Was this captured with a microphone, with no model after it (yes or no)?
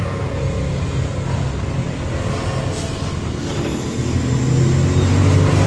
yes